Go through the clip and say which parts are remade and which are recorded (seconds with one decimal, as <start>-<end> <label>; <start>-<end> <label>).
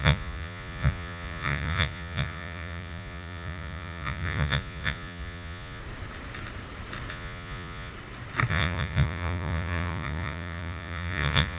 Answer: 0.0-5.8 remade; 5.8-7.1 recorded; 7.1-7.9 remade; 7.9-8.5 recorded; 8.5-11.6 remade